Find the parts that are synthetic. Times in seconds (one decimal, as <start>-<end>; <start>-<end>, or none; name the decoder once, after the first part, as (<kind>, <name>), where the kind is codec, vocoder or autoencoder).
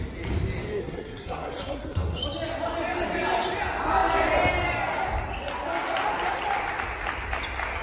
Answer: 0.8-2.2 (codec, SNAC)